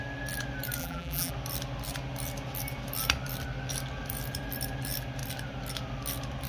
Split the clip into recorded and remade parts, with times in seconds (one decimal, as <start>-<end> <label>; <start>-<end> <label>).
0.0-0.8 recorded; 0.8-1.3 remade; 1.3-6.5 recorded